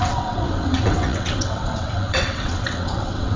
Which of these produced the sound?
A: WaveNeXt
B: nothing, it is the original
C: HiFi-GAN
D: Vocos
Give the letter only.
A